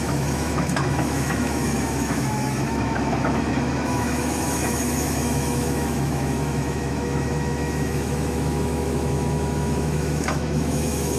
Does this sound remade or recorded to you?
remade